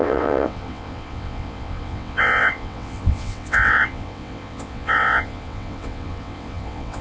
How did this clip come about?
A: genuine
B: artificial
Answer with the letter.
B